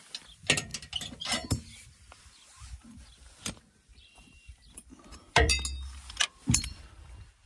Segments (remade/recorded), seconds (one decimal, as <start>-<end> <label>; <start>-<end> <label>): 0.0-3.9 recorded; 3.9-5.5 remade; 5.5-6.2 recorded; 6.2-6.9 remade; 6.9-7.5 recorded